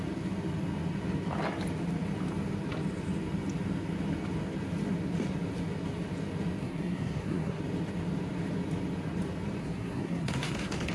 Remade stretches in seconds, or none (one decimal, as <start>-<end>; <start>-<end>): 6.6-7.6; 9.6-10.9